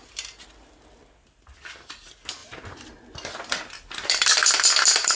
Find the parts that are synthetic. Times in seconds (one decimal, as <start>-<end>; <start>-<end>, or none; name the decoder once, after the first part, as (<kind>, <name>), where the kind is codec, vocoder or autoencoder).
none